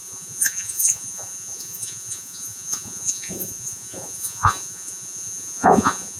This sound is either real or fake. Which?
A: fake